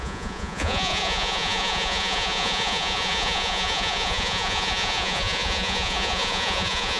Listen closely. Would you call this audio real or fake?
fake